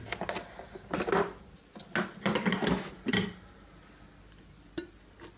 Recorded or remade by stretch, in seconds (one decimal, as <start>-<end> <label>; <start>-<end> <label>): 0.0-5.4 recorded